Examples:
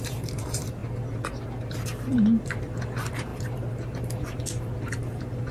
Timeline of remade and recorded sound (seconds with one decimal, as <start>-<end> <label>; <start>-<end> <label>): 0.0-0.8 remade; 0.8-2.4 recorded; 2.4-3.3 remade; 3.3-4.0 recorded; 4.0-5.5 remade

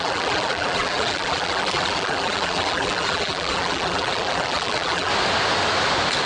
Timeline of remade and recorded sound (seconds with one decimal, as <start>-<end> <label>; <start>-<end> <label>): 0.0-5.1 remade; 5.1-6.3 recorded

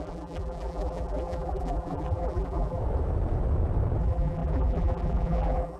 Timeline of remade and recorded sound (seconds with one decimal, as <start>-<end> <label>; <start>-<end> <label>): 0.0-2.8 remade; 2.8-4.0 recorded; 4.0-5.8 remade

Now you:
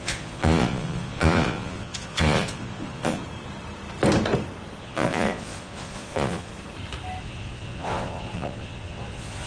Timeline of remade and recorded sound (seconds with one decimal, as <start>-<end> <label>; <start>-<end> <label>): 0.0-3.2 remade; 3.2-4.8 recorded; 4.8-6.5 remade; 6.5-7.2 recorded; 7.2-9.5 remade